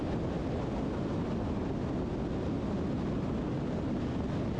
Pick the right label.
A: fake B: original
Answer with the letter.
B